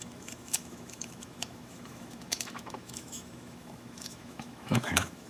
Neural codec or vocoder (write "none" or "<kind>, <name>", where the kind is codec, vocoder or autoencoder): autoencoder, DAC-VAE